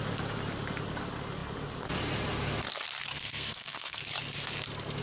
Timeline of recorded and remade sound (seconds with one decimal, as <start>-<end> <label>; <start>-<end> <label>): 0.0-3.1 recorded; 3.1-4.0 remade; 4.0-5.0 recorded